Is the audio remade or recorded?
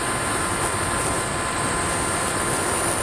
recorded